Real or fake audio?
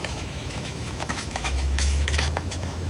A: fake